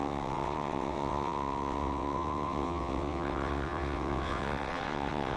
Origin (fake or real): fake